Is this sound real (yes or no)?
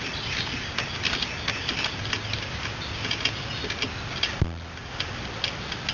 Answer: yes